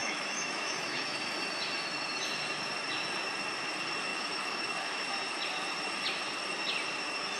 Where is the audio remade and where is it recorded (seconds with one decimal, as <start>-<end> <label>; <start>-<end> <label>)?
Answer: 0.0-1.2 remade; 1.2-4.1 recorded; 4.1-5.1 remade; 5.1-7.4 recorded